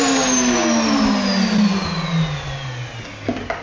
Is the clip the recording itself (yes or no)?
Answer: yes